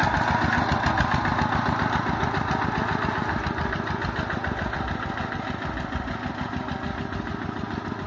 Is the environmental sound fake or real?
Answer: real